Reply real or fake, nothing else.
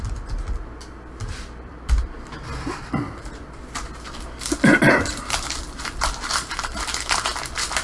fake